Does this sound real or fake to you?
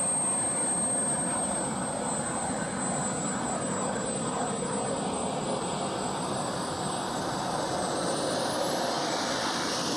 real